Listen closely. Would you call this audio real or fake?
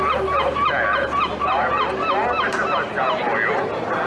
real